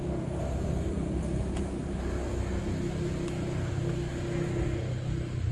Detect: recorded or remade recorded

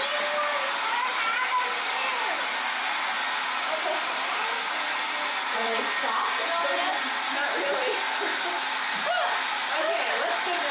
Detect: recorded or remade recorded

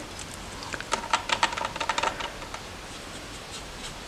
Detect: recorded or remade recorded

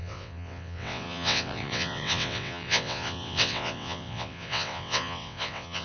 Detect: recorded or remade remade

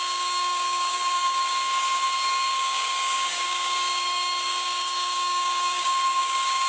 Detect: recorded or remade remade